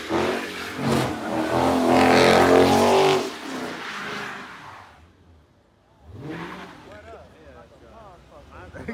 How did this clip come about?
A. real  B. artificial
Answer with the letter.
A